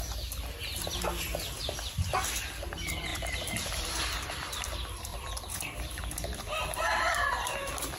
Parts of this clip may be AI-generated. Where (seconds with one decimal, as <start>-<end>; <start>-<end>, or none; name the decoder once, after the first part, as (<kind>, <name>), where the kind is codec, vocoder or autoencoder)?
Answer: 3.1-3.9 (vocoder, BigVGAN v2); 5.1-5.9